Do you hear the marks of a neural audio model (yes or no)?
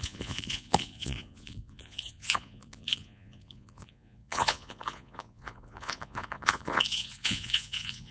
yes